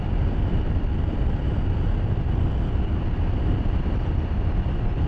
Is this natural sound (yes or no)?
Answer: yes